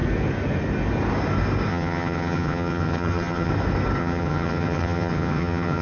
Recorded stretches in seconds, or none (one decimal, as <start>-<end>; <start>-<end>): 0.0-1.7; 3.5-4.0